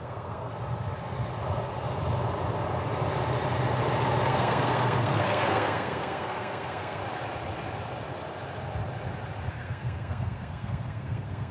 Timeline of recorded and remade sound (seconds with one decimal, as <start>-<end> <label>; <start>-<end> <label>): 0.0-0.5 remade; 0.5-4.3 recorded; 4.3-7.0 remade; 7.0-9.5 recorded; 9.5-11.5 remade